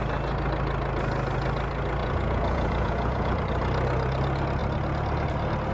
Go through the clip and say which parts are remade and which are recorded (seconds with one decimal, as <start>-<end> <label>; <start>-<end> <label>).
0.0-2.0 recorded; 2.0-3.4 remade; 3.4-5.7 recorded